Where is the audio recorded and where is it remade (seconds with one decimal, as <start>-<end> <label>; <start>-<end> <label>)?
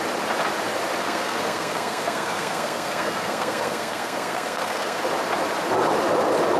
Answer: 0.0-1.0 recorded; 1.0-5.0 remade; 5.0-6.6 recorded